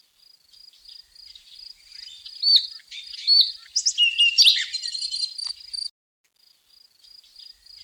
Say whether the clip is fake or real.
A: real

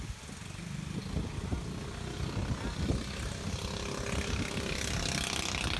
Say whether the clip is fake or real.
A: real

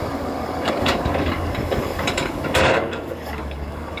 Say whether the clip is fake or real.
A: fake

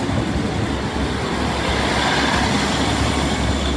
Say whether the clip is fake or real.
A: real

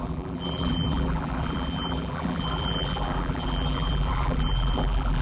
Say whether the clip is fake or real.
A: fake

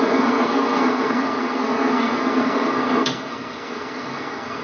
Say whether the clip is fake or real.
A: fake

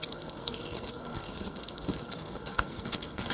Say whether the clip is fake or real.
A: fake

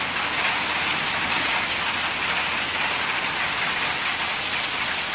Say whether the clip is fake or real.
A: fake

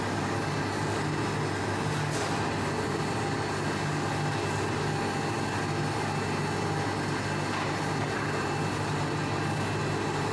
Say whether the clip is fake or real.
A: real